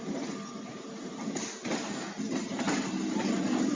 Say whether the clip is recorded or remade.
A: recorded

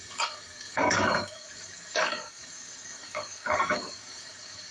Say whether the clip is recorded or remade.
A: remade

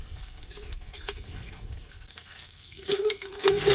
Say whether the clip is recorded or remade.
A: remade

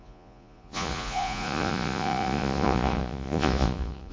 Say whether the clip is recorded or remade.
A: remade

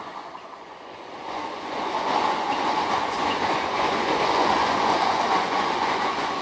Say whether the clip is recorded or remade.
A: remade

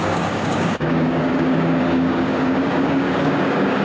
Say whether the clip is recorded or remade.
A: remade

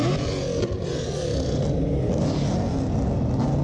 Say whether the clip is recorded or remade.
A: recorded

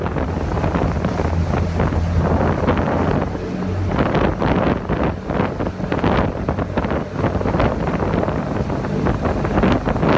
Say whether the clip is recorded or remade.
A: recorded